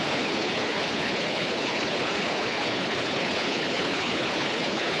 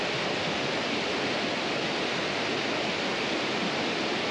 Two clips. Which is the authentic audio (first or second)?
second